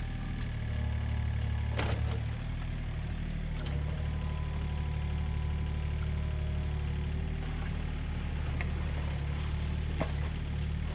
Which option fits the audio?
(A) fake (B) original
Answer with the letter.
B